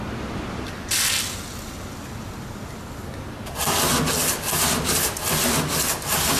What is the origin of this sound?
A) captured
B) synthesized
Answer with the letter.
A